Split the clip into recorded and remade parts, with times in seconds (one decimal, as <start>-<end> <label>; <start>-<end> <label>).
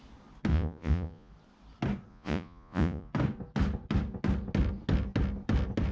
0.0-0.5 recorded; 0.5-1.3 remade; 1.3-2.1 recorded; 2.1-3.1 remade; 3.1-5.9 recorded